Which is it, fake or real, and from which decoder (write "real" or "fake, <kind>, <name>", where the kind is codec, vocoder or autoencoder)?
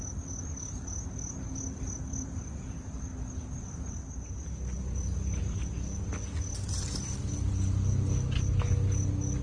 real